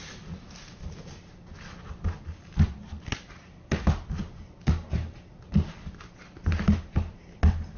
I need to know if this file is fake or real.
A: real